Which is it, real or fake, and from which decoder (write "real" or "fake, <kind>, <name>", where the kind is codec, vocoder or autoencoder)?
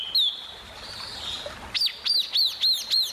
real